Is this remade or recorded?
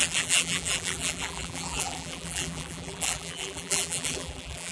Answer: remade